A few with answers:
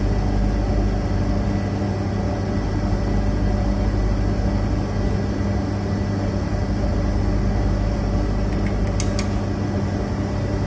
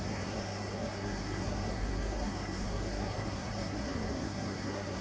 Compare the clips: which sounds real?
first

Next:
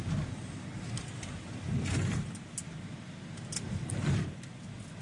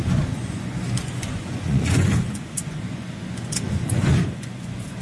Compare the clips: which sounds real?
first